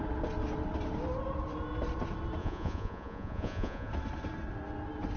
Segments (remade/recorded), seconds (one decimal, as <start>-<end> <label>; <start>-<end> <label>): 0.0-2.4 recorded; 2.4-3.9 remade; 3.9-5.2 recorded